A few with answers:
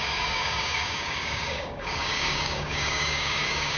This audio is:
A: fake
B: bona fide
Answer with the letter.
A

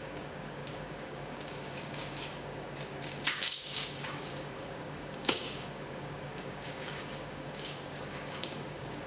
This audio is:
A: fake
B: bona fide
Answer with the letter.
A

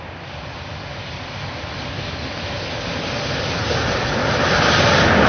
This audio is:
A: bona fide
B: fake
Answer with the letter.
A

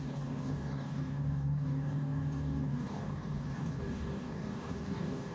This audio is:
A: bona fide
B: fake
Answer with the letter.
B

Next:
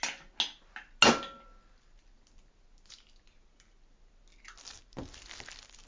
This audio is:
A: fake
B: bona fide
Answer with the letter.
B